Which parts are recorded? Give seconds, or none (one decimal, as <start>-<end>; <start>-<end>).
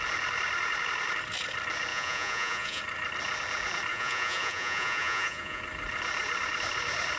0.0-1.9; 2.8-3.9; 5.6-7.2